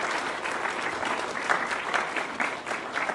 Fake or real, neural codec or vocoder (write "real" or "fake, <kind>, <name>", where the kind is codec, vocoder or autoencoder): real